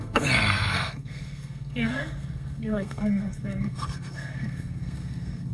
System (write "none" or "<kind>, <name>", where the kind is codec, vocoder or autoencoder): codec, SNAC